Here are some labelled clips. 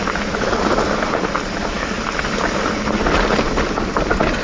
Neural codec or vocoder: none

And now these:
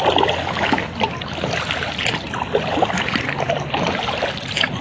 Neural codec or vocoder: none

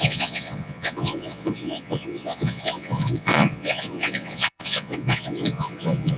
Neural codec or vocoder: vocoder, Vocos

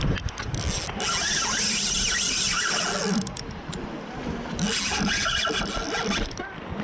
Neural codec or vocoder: none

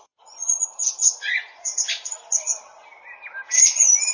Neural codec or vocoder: none